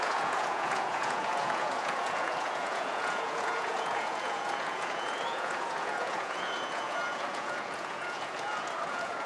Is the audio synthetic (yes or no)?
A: yes